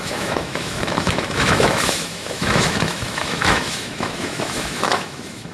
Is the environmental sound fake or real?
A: fake